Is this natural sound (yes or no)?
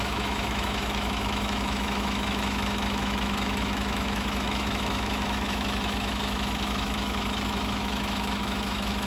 no